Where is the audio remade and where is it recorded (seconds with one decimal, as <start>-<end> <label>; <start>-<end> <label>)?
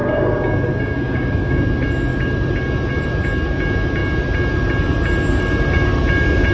0.0-1.6 remade; 1.6-6.5 recorded